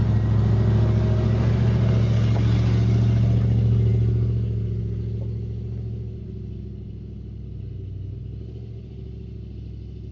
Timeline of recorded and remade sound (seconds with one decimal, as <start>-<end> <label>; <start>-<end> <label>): 0.0-10.1 recorded